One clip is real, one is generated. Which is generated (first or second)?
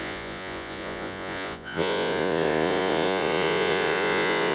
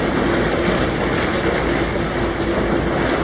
first